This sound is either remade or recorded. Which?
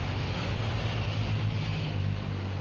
recorded